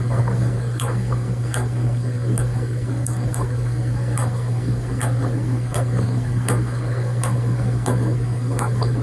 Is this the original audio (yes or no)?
no